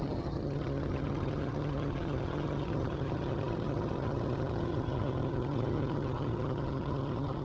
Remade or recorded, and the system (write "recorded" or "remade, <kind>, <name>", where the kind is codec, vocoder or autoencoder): remade, vocoder, HiFi-GAN